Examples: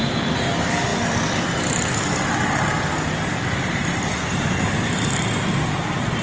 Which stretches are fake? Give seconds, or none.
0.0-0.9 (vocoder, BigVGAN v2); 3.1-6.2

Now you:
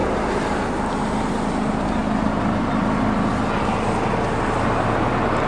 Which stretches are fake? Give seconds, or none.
none

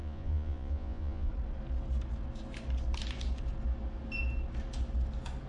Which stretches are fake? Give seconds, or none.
0.0-1.3 (vocoder, Vocos)